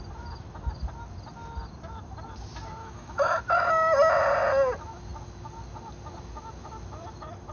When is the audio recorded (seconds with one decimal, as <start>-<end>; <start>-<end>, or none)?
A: 0.0-2.8; 3.4-7.5